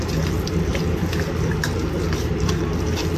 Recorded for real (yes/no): yes